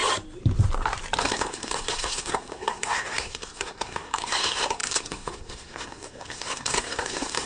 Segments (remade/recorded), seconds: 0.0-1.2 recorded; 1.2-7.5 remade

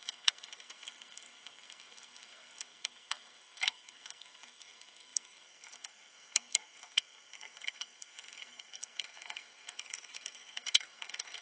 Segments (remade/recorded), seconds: 0.0-11.4 remade

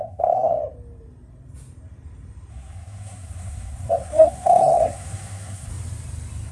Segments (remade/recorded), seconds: 0.0-0.6 remade; 0.6-2.5 recorded; 2.5-5.7 remade; 5.7-6.5 recorded

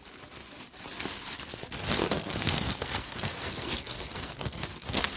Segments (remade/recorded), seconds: 0.0-2.0 recorded; 2.0-5.2 remade

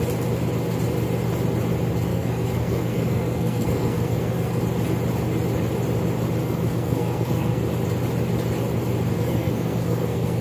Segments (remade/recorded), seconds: 0.0-2.1 recorded; 2.1-4.6 remade; 4.6-6.4 recorded; 6.4-7.6 remade; 7.6-9.1 recorded; 9.1-10.4 remade

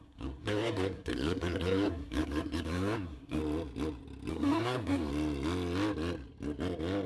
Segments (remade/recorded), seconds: 0.0-3.4 remade; 3.4-4.3 recorded; 4.3-5.1 remade; 5.1-7.1 recorded

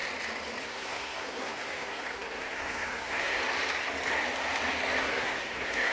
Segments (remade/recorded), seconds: 0.0-0.6 recorded; 0.6-3.4 remade; 3.4-5.0 recorded; 5.0-5.9 remade